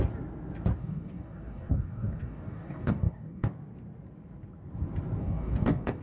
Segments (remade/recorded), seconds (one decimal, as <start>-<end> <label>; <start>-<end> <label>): 0.0-0.8 recorded; 0.8-3.5 remade; 3.5-5.2 recorded; 5.2-6.0 remade